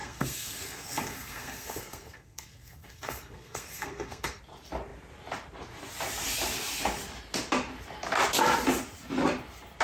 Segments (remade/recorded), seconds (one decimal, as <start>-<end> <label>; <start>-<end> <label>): 0.0-4.4 remade; 4.4-9.8 recorded